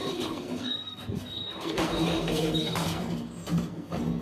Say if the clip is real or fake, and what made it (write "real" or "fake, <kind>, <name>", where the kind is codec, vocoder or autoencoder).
fake, codec, SNAC